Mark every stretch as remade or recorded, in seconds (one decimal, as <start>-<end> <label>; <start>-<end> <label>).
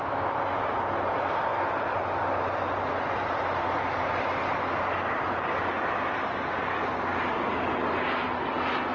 0.0-8.9 recorded